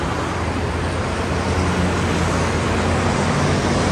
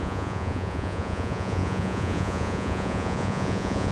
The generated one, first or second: second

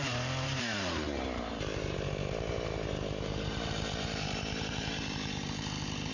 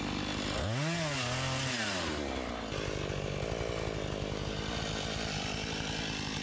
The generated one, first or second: first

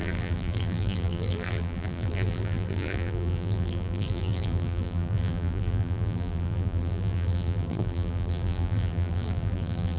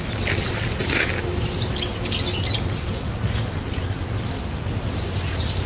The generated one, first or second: first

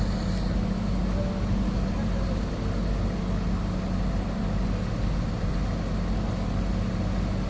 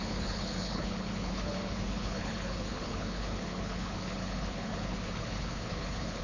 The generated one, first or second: second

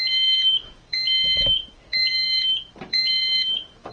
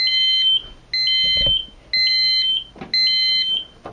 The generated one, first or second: first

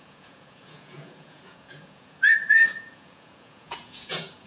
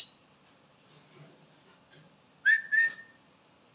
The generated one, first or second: first